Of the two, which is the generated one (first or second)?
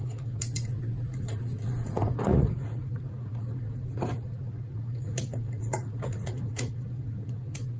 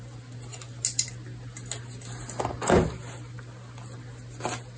first